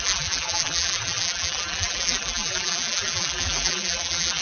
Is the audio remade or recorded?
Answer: remade